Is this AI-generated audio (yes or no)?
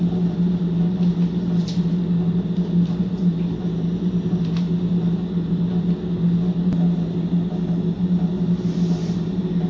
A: no